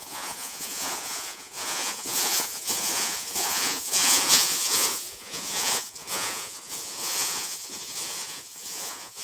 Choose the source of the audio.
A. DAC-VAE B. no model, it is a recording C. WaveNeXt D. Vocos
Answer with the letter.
D